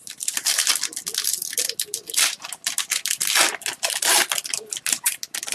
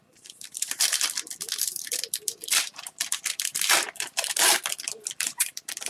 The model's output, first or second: second